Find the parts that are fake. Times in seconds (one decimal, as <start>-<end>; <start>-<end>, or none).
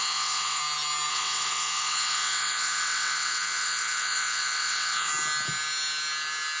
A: 0.0-0.6; 1.1-5.1